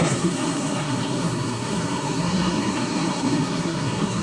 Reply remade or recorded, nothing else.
remade